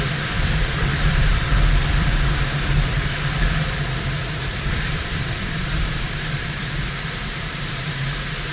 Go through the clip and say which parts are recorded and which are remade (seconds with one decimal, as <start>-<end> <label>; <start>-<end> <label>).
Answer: 0.0-1.3 remade; 1.3-1.9 recorded; 1.9-3.2 remade; 3.2-4.5 recorded; 4.5-8.5 remade